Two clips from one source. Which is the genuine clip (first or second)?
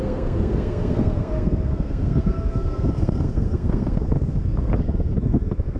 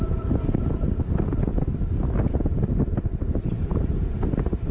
second